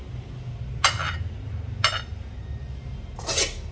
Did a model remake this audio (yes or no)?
no